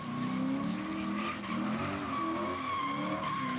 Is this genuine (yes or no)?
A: yes